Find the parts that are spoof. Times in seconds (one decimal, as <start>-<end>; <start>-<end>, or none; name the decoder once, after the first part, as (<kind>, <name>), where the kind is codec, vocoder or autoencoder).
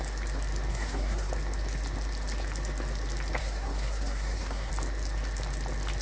0.7-1.3 (codec, SNAC); 3.4-4.7